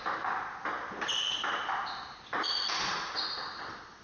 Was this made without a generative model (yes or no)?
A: yes